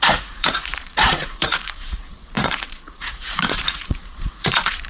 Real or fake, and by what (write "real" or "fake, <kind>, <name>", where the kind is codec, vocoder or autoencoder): fake, vocoder, Vocos